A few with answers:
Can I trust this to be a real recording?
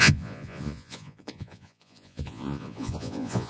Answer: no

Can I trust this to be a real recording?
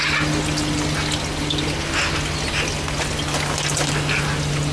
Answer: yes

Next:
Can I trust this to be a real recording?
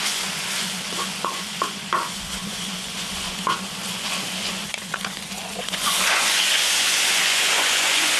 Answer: no